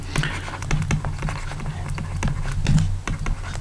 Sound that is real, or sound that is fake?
real